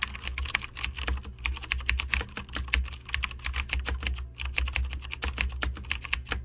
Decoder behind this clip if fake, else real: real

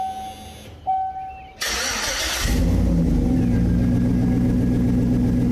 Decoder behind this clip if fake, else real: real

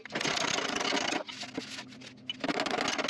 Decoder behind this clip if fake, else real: real